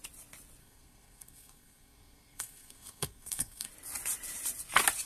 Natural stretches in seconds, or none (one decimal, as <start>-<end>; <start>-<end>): 0.0-0.6; 3.7-5.1